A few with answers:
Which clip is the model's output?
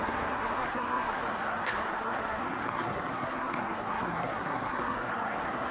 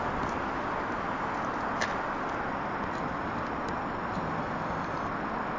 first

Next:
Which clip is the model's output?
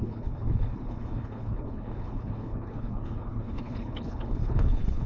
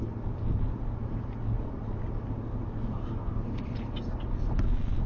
first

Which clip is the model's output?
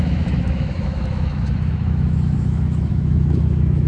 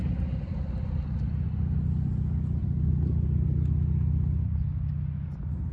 first